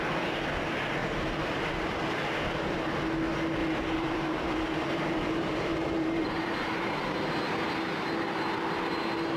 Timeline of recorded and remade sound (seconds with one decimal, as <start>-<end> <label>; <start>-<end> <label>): 0.0-1.0 recorded; 1.0-1.7 remade; 1.7-3.6 recorded; 3.6-7.0 remade; 7.0-9.4 recorded